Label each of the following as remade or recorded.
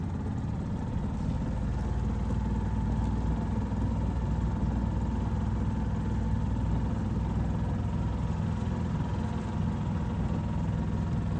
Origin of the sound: recorded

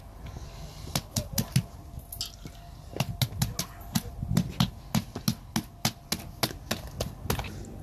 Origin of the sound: recorded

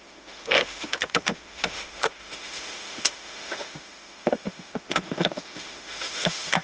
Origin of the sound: remade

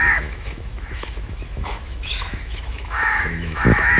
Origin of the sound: remade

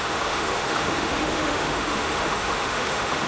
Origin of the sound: remade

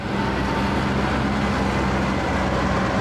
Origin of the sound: recorded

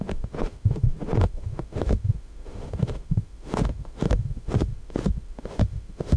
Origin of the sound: remade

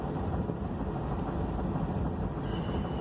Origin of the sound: recorded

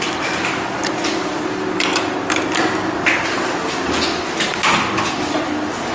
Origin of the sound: recorded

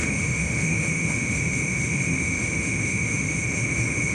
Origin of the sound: remade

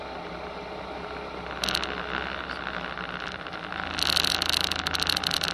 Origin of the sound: recorded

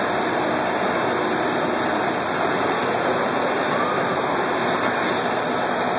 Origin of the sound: recorded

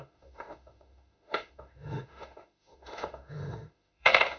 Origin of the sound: remade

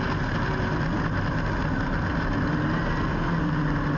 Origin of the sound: recorded